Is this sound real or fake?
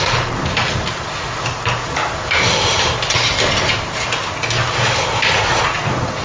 real